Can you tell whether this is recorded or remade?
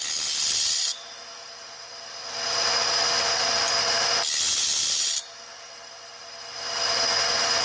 recorded